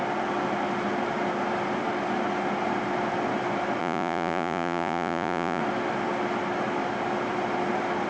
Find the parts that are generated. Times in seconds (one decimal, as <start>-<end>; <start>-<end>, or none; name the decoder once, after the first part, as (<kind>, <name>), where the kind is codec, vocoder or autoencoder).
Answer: 3.8-5.6 (vocoder, Vocos)